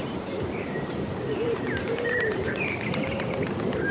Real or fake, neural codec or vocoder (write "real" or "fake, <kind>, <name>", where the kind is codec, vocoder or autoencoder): fake, vocoder, BigVGAN v2